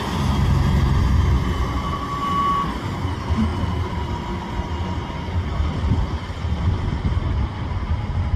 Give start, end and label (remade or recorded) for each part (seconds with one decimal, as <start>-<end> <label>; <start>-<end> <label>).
0.0-8.4 recorded